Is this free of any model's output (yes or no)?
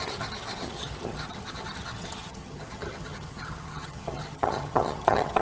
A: no